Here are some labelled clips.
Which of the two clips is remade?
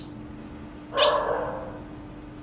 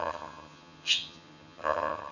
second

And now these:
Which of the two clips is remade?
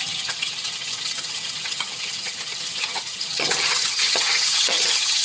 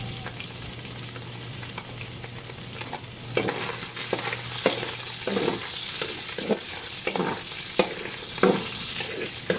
first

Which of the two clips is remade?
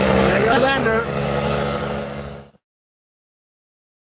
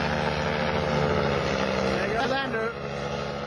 first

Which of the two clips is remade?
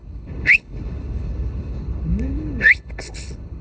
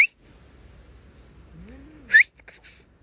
first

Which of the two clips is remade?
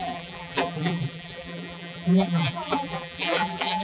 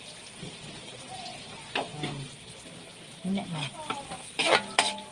first